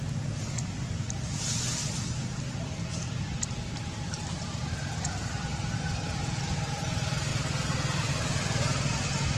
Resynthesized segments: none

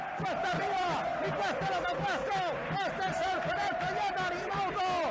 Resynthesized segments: none

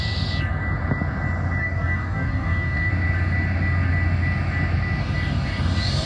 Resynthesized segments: 1.6-2.9 (codec, DAC); 5.0-6.1